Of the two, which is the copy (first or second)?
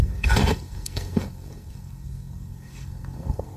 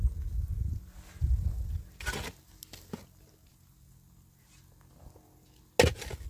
first